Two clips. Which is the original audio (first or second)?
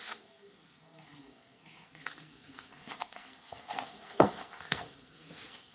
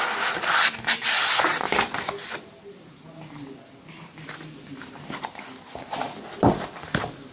second